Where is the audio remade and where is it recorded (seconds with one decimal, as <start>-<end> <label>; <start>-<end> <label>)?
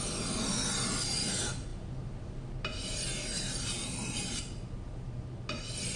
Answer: 0.0-6.0 recorded